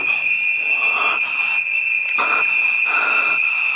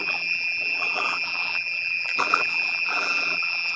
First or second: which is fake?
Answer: second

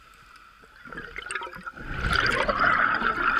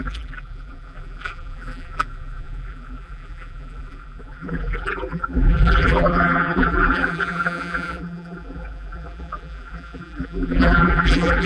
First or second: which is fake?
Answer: second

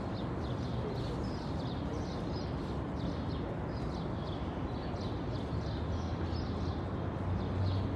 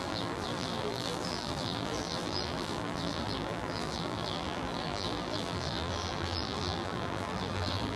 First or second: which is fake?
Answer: second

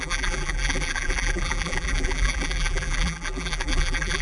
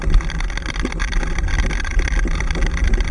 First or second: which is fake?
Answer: first